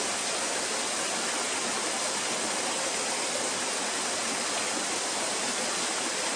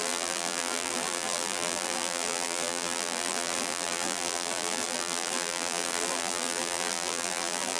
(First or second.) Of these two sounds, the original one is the first